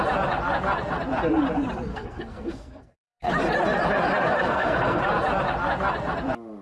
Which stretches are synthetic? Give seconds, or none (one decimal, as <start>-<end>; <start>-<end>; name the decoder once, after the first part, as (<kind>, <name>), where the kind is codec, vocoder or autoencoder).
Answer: 1.9-3.3 (codec, SNAC); 4.4-5.0